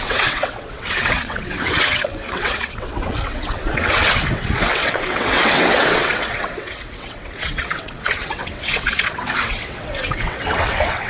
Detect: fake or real fake